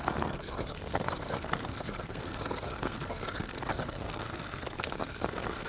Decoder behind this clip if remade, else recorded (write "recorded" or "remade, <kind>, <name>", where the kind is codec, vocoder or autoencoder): remade, codec, SNAC